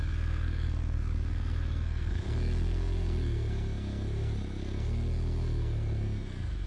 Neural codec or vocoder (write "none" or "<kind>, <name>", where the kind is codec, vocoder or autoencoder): codec, SNAC